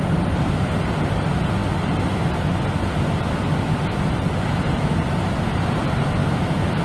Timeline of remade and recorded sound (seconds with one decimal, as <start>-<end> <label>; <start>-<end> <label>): 0.0-6.2 recorded; 6.2-6.8 remade